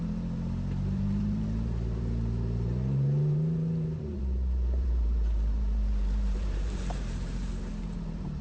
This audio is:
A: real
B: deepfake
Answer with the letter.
B